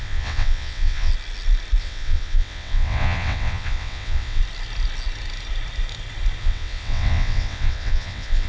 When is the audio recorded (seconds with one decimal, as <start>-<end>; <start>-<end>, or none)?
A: 1.1-1.8; 4.4-6.4

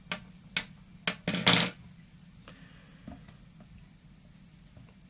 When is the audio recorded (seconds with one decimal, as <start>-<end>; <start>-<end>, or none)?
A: 0.0-5.1